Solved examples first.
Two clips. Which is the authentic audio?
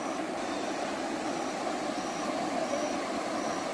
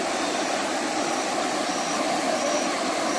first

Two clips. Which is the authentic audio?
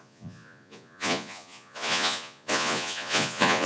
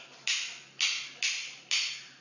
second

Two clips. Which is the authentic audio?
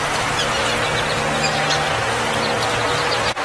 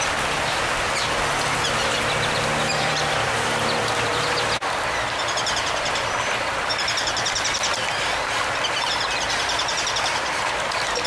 first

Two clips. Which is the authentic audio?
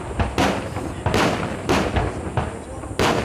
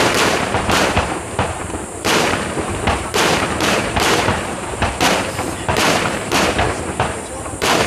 first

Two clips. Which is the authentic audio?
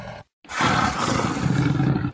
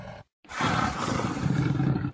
first